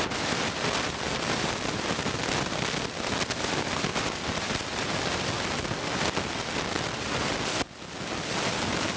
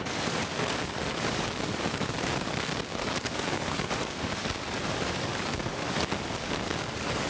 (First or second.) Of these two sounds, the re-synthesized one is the second